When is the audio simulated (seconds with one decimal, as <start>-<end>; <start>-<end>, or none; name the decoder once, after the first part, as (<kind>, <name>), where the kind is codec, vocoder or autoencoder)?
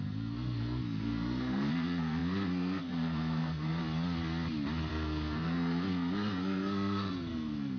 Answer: 0.0-3.8 (codec, SNAC); 4.9-7.8